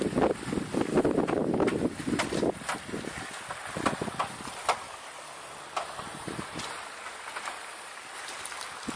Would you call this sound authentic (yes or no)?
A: yes